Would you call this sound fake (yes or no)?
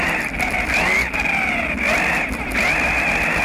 no